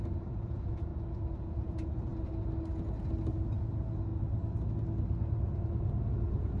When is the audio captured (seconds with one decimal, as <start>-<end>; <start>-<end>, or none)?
0.9-1.5; 2.1-3.3; 4.1-6.1